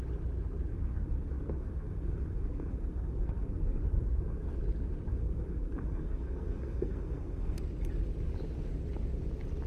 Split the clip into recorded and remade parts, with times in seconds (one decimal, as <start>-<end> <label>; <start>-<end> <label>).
0.0-0.7 recorded; 0.7-4.6 remade; 4.6-5.1 recorded; 5.1-7.6 remade; 7.6-9.7 recorded